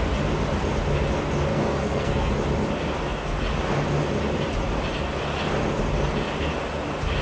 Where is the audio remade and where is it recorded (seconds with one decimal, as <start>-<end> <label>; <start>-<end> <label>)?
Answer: 0.0-1.5 recorded; 1.5-2.3 remade; 2.3-7.2 recorded